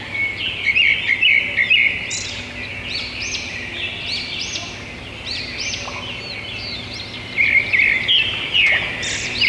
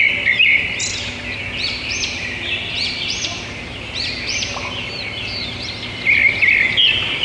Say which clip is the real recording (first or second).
first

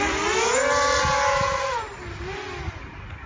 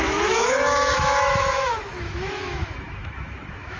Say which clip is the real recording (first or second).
first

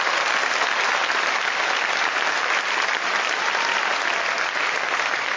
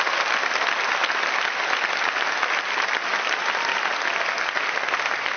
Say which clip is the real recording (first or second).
second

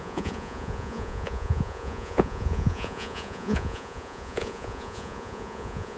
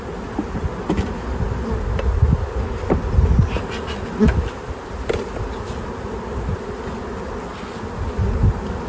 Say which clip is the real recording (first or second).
second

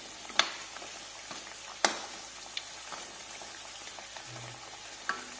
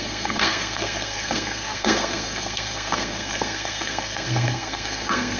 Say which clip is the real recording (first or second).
first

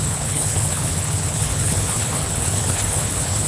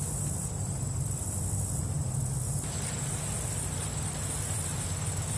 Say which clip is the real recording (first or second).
second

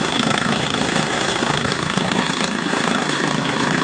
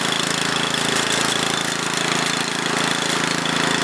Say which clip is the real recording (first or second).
second